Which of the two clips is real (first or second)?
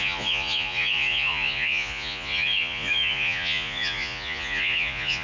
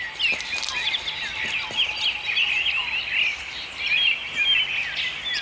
second